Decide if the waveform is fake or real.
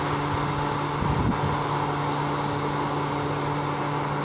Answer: real